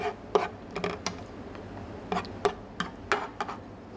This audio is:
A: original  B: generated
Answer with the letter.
A